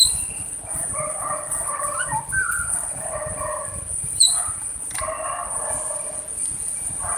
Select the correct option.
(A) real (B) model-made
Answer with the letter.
B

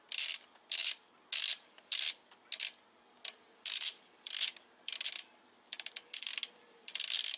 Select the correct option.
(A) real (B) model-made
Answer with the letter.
A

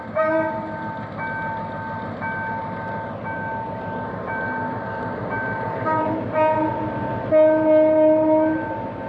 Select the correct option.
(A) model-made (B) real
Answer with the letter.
B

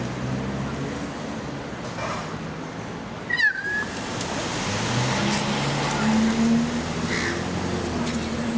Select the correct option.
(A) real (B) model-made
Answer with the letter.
A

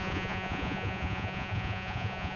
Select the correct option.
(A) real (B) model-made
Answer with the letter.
B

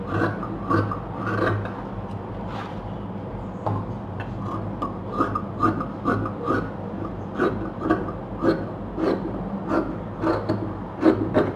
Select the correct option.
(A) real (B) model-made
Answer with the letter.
A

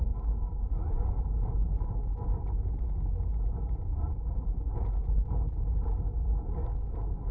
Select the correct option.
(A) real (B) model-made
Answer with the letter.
A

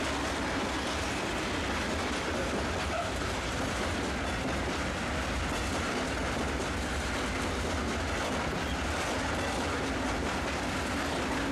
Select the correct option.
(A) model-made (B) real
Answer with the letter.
B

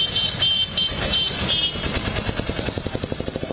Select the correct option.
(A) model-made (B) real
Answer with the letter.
A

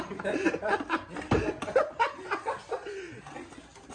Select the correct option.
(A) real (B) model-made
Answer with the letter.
A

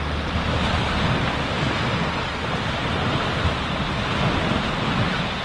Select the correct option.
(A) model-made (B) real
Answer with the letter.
B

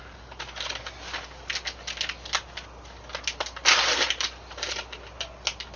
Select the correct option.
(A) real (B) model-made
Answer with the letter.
A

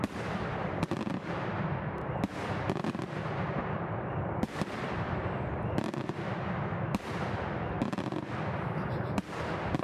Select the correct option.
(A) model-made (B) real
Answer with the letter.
A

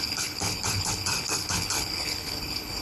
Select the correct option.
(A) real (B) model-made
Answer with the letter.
B